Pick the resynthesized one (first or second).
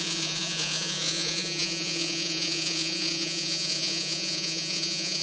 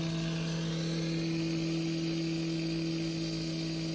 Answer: first